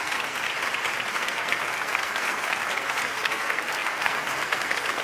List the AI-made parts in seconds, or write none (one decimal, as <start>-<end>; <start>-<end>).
0.0-0.5; 1.1-5.0